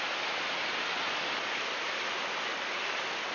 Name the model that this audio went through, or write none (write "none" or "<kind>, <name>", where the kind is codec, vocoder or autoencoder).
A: none